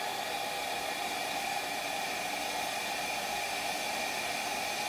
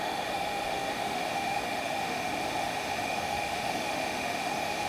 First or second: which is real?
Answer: first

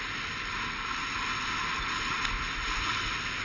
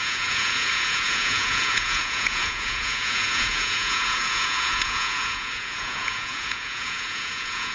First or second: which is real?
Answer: first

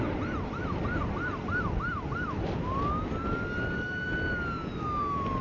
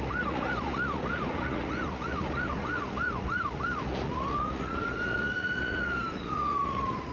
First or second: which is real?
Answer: first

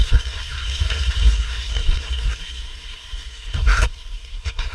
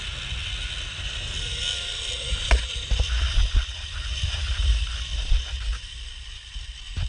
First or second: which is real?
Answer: second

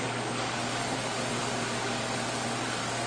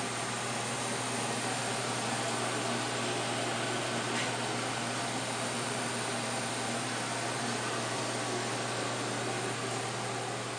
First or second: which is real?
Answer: second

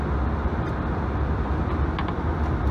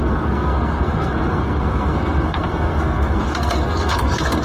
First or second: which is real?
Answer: first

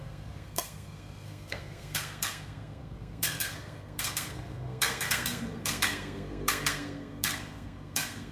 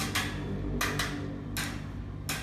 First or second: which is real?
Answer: second